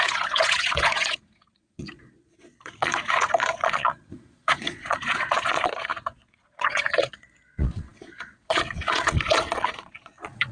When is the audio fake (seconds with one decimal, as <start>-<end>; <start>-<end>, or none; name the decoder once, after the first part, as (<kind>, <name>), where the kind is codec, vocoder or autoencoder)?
0.0-10.5 (vocoder, Vocos)